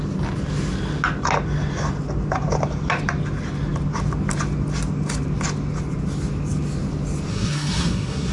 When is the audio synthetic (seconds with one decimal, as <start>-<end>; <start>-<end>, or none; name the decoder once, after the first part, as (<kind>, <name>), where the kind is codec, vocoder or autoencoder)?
7.3-8.3 (codec, SNAC)